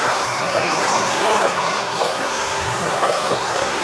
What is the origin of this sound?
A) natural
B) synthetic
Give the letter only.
B